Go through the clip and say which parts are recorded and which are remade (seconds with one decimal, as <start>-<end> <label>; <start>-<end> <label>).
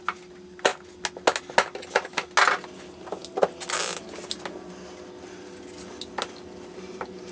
0.0-7.3 recorded